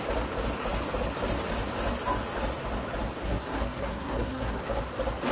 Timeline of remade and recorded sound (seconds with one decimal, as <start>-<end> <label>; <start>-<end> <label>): 0.0-3.2 recorded; 3.2-4.6 remade; 4.6-5.3 recorded